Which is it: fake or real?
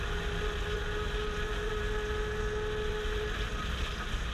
real